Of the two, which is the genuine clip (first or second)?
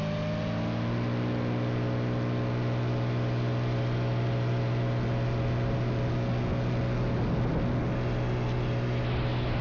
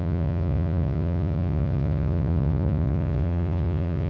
first